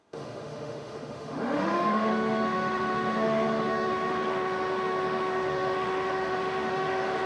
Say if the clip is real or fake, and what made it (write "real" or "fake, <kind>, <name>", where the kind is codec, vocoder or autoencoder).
fake, autoencoder, DAC-VAE